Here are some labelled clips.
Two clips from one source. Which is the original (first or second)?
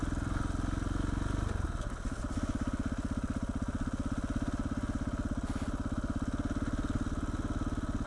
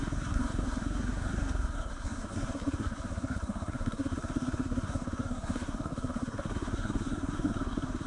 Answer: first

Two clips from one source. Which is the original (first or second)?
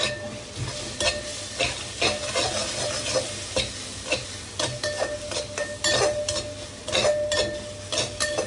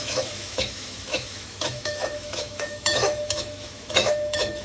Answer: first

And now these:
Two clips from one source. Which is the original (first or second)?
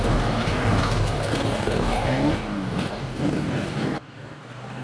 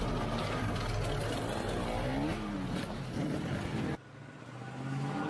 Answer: second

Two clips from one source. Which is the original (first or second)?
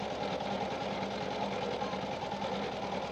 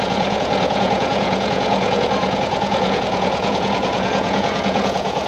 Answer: first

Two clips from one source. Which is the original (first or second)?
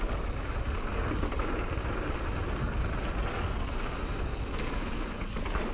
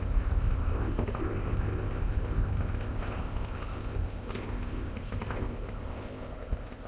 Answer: first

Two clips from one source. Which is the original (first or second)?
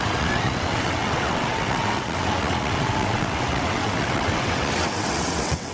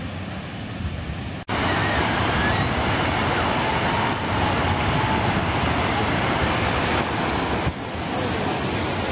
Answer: second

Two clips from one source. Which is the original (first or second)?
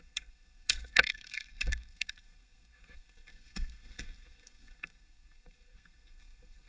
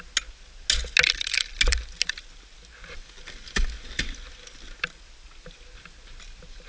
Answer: second